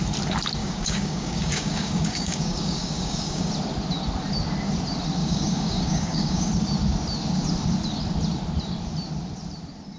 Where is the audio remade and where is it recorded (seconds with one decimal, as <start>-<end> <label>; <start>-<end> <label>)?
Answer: 0.0-0.6 recorded; 0.6-3.5 remade; 3.5-5.2 recorded; 5.2-6.5 remade; 6.5-10.0 recorded